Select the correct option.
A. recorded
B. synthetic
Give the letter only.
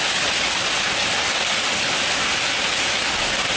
A